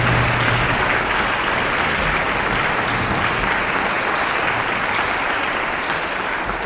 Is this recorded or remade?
recorded